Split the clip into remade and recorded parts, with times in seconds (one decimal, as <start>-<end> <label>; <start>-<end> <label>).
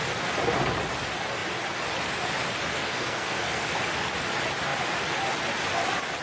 0.0-2.7 recorded; 2.7-3.8 remade; 3.8-6.2 recorded